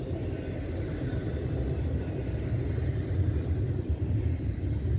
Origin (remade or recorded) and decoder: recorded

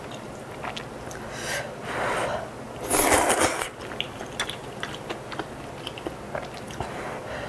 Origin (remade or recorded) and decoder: recorded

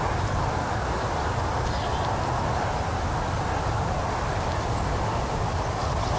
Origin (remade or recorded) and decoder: recorded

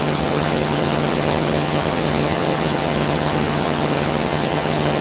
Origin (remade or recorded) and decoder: remade, vocoder, HiFi-GAN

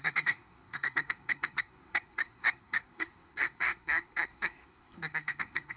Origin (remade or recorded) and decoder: remade, codec, SNAC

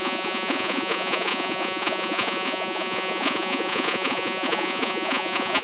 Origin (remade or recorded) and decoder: remade, vocoder, Vocos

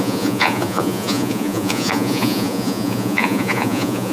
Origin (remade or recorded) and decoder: remade, vocoder, Vocos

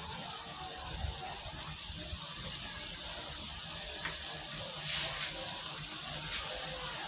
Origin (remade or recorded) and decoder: recorded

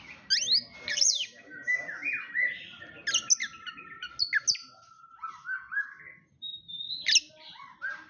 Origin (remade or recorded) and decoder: recorded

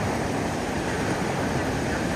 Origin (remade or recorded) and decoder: recorded